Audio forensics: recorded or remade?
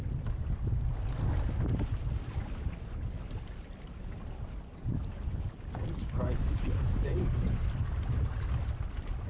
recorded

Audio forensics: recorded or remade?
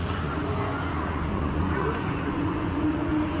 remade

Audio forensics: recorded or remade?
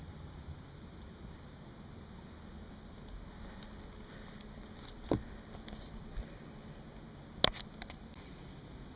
recorded